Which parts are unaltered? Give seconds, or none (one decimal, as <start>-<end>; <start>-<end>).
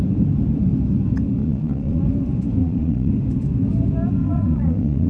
0.0-1.4; 2.0-2.6; 3.1-4.2